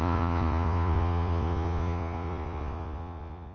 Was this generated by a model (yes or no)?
yes